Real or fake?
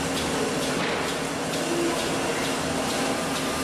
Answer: fake